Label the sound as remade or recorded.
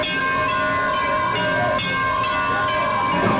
recorded